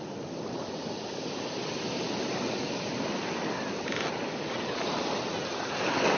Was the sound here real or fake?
real